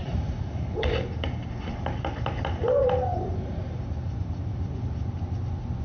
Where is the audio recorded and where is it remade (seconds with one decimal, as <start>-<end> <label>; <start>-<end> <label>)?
0.0-1.8 remade; 1.8-3.1 recorded; 3.1-4.7 remade; 4.7-5.8 recorded